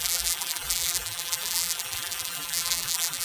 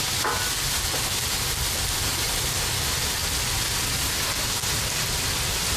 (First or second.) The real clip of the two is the second